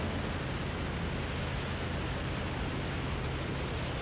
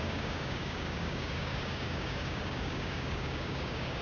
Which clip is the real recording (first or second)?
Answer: first